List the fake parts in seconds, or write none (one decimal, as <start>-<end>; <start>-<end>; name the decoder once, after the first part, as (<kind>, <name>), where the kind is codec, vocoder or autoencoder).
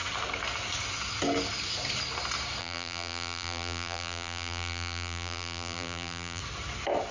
2.6-6.4 (vocoder, BigVGAN v2)